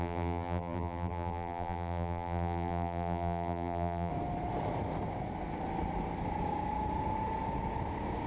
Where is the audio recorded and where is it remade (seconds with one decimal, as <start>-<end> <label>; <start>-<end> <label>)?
0.0-4.1 remade; 4.1-8.3 recorded